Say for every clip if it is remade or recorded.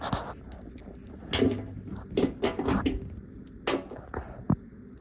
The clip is recorded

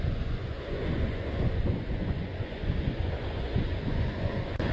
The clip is remade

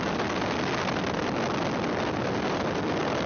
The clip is recorded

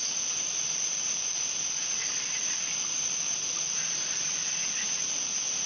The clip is recorded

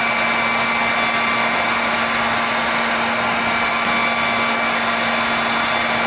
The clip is recorded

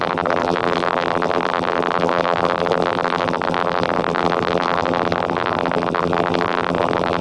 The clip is remade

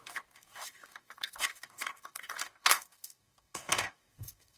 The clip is remade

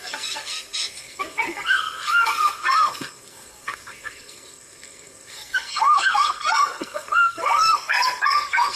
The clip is remade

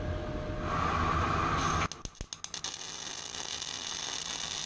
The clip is recorded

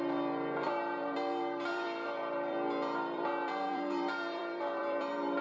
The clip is remade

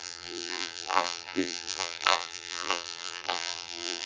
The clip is remade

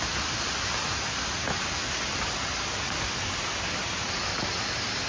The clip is recorded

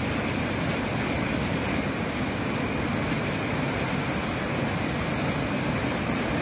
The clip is recorded